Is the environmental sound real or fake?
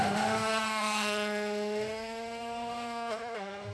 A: fake